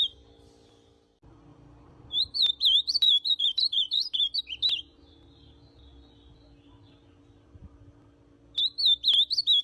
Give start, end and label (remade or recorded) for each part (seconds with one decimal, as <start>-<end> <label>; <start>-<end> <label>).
0.0-1.5 recorded; 1.5-5.0 remade; 5.0-9.6 recorded